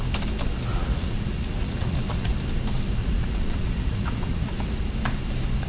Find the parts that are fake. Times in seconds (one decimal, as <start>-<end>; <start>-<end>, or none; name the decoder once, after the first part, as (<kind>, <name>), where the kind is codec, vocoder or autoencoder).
0.7-2.3 (vocoder, Vocos); 3.0-4.8